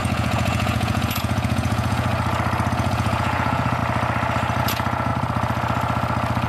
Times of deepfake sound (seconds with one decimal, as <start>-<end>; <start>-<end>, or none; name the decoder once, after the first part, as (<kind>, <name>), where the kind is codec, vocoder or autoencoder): 0.0-2.1 (vocoder, Vocos); 2.7-3.8; 4.6-5.1